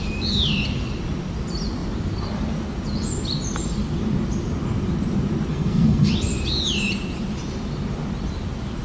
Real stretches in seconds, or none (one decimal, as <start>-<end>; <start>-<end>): 0.0-5.5; 6.1-8.8